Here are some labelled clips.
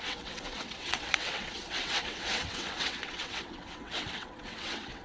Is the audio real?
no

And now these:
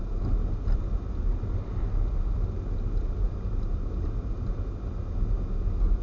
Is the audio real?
yes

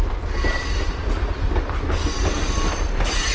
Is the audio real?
yes